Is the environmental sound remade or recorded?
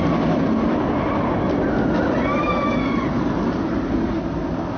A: recorded